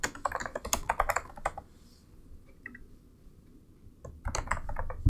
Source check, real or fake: real